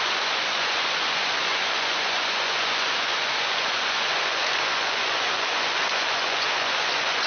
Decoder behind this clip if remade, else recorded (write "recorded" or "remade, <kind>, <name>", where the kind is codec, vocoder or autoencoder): remade, vocoder, Vocos